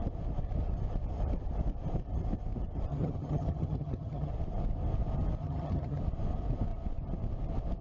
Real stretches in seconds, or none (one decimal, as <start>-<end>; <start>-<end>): 0.0-2.9; 4.3-5.4; 6.0-7.8